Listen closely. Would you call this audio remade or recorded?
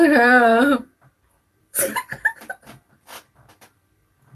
remade